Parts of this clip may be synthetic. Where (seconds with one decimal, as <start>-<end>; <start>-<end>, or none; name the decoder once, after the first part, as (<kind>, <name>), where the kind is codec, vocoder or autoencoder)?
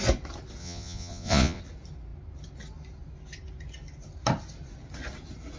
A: 0.6-1.6 (vocoder, Vocos)